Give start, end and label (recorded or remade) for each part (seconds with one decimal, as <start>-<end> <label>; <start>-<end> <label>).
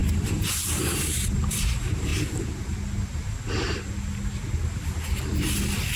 0.0-2.1 remade; 2.1-6.0 recorded